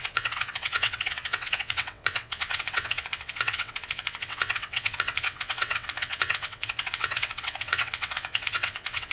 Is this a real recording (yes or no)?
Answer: no